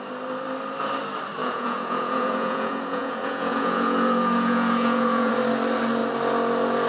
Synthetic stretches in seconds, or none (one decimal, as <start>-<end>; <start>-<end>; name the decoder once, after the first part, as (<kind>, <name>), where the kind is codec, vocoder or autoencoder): 1.4-5.3 (vocoder, Vocos)